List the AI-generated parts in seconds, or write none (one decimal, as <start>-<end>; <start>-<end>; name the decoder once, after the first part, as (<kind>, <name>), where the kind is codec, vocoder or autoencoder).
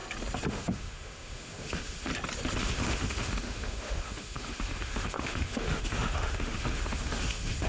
0.5-2.1 (autoencoder, DAC-VAE); 2.6-7.7